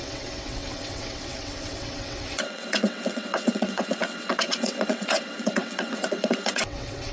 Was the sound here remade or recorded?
remade